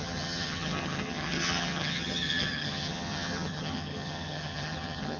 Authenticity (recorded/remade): remade